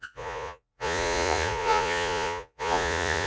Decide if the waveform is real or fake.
fake